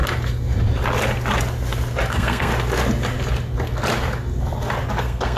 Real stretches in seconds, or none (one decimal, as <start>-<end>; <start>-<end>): 0.0-2.1; 2.5-5.0